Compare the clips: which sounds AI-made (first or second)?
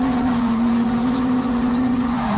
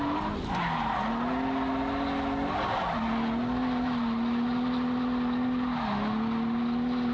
first